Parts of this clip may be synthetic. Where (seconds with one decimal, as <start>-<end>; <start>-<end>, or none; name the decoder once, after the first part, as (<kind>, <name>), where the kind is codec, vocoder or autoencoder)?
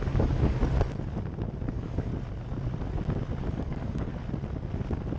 0.0-0.6 (codec, DAC); 1.7-2.1; 3.5-4.1